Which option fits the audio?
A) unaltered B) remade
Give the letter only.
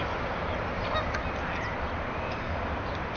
A